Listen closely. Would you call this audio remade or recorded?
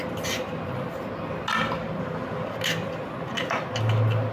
recorded